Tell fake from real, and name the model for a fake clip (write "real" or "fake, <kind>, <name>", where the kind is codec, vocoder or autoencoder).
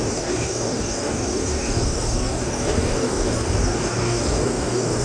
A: fake, codec, DAC